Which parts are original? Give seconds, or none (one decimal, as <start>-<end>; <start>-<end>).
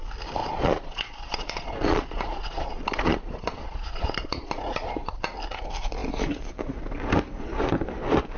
0.0-0.4; 4.9-8.4